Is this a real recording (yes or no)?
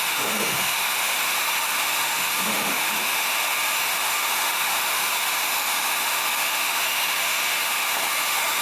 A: no